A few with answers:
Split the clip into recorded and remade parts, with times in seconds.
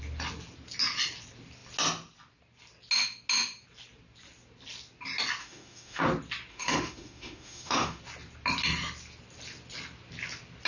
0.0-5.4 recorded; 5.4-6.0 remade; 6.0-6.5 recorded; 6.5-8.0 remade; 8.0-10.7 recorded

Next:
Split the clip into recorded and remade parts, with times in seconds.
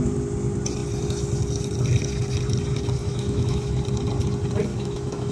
0.0-3.0 recorded; 3.0-3.8 remade; 3.8-4.7 recorded; 4.7-5.3 remade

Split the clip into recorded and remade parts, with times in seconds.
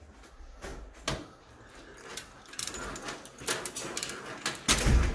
0.0-2.1 recorded; 2.1-2.7 remade; 2.7-5.1 recorded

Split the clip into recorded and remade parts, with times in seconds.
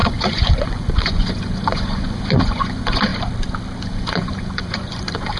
0.0-3.1 remade; 3.1-3.8 recorded; 3.8-5.4 remade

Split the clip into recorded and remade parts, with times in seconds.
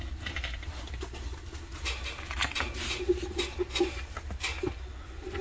0.0-5.4 recorded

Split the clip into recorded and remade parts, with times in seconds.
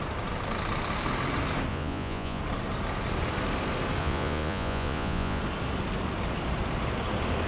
0.0-1.7 recorded; 1.7-2.4 remade; 2.4-4.0 recorded; 4.0-5.4 remade; 5.4-7.5 recorded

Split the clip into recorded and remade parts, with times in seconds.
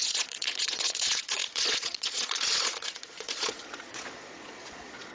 0.0-5.1 remade